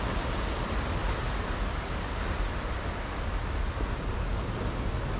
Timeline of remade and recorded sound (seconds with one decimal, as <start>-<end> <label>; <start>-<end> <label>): 0.0-5.2 recorded